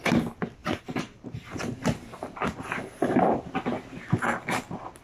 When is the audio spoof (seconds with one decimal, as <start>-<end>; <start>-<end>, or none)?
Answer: 0.6-3.3